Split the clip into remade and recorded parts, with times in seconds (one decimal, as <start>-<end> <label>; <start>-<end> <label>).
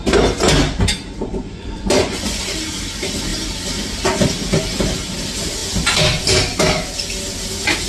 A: 0.0-1.3 recorded; 1.3-2.4 remade; 2.4-7.9 recorded